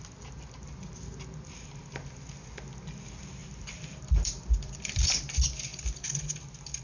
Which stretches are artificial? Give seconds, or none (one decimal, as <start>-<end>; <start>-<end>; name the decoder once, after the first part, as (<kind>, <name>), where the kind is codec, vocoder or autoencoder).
3.4-5.2 (vocoder, BigVGAN v2)